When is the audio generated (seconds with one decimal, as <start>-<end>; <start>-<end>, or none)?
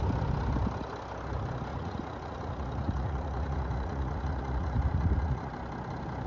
1.7-5.5